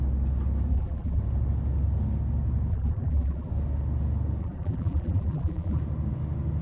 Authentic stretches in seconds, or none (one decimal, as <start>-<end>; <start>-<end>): 0.0-0.7; 1.2-2.7; 3.5-4.4; 5.8-6.6